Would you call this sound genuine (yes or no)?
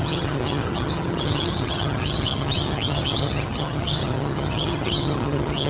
no